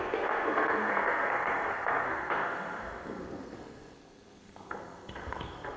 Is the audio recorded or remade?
remade